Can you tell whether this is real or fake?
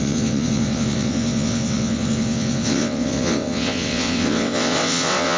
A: fake